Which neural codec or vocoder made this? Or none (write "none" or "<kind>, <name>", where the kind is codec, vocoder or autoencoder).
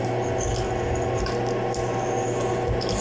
none